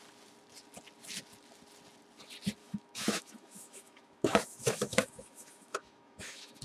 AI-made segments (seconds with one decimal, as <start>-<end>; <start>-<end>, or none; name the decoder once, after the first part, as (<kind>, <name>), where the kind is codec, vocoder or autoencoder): 2.6-6.6 (autoencoder, DAC-VAE)